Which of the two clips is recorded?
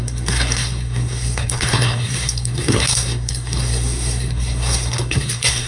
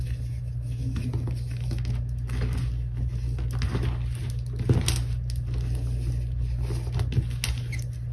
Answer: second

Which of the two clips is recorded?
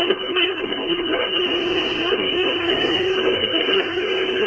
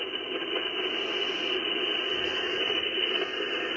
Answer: second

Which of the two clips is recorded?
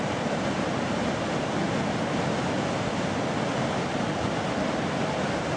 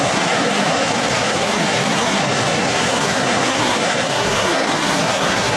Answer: first